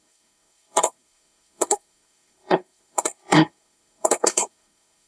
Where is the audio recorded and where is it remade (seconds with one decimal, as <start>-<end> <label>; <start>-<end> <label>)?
0.0-5.1 remade